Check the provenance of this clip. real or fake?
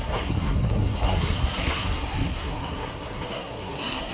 fake